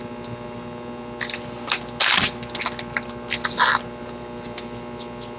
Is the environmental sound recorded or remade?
recorded